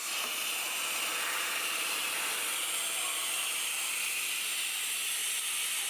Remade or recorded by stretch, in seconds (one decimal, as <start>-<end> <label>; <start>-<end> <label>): 0.0-1.1 recorded; 1.1-3.8 remade; 3.8-5.9 recorded

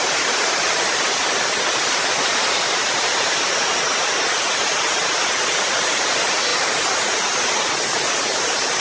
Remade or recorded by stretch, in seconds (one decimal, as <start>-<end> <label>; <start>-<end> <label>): 0.0-8.8 recorded

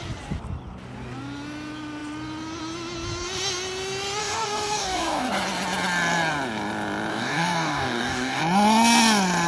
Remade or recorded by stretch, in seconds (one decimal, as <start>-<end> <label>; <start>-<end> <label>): 0.0-4.2 recorded; 4.2-5.3 remade; 5.3-7.1 recorded; 7.1-8.4 remade; 8.4-9.5 recorded

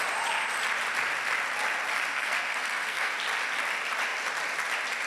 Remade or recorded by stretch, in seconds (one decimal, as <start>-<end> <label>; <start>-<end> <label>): 0.0-2.1 recorded; 2.1-3.1 remade; 3.1-5.1 recorded

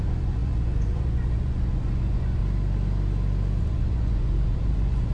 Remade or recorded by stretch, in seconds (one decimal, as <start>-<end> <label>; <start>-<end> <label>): 0.0-2.4 remade; 2.4-3.6 recorded; 3.6-5.1 remade

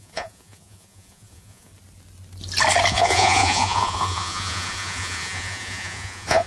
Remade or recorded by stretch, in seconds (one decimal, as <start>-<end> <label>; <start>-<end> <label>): 0.0-1.7 remade; 1.7-2.9 recorded; 2.9-6.5 remade